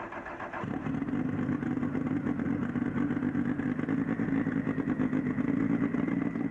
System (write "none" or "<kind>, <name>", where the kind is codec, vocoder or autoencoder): none